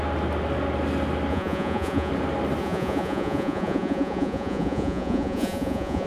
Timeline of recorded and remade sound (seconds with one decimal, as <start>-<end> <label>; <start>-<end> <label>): 0.0-1.3 recorded; 1.3-2.1 remade; 2.1-2.6 recorded; 2.6-6.1 remade